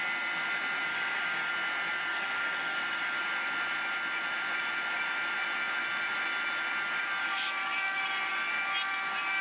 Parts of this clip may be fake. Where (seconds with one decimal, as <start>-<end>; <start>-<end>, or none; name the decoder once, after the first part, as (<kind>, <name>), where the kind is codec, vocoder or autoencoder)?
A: 0.9-1.5 (codec, DAC); 2.1-3.2; 7.2-8.0